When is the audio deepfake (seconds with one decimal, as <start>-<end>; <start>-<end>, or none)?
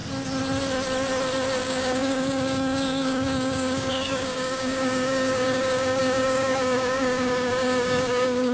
1.6-8.5